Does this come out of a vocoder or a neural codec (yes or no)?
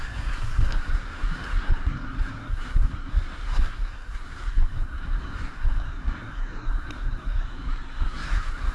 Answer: yes